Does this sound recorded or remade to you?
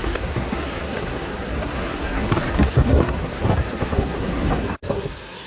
remade